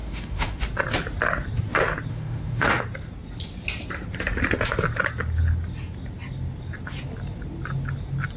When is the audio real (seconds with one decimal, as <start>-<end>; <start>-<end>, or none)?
0.6-2.1; 2.8-8.4